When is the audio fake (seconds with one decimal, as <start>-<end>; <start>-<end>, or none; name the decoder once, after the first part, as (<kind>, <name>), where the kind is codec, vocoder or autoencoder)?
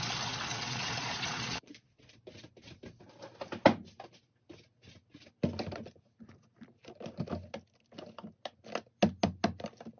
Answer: 0.5-2.1 (vocoder, Vocos)